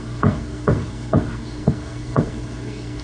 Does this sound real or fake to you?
fake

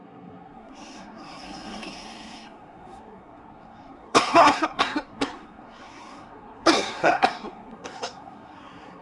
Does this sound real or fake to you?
fake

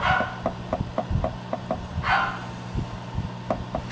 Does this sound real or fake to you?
real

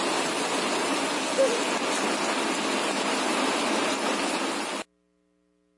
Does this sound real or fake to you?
real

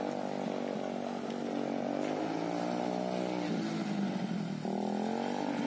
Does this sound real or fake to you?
real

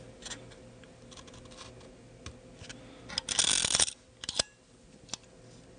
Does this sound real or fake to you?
real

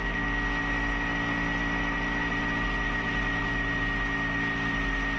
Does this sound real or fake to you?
real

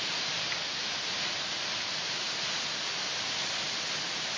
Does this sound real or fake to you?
real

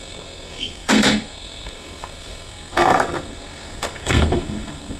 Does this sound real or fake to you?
fake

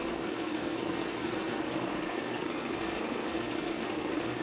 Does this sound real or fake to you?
fake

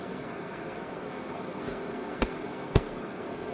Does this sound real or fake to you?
fake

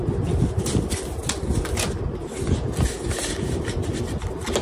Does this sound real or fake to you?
real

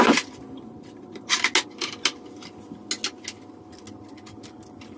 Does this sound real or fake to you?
real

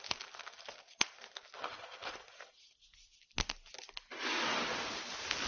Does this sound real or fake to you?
real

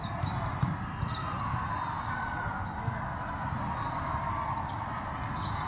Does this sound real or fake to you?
real